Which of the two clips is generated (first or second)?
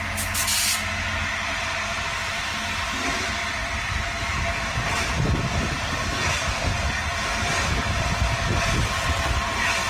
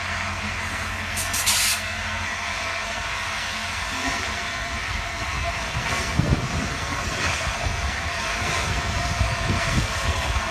second